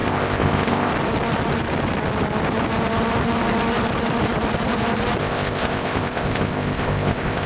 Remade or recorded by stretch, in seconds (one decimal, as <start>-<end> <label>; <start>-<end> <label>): 0.0-0.9 remade; 0.9-5.2 recorded; 5.2-7.5 remade